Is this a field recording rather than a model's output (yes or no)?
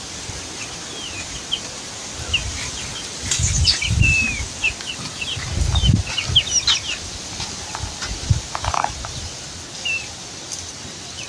yes